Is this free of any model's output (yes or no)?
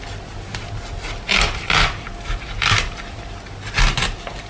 yes